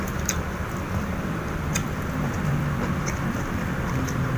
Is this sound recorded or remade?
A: remade